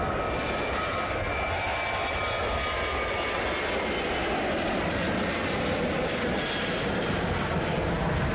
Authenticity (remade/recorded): recorded